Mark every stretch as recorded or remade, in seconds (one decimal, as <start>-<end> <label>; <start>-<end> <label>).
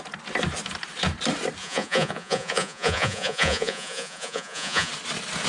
0.0-1.6 recorded; 1.6-4.9 remade; 4.9-5.5 recorded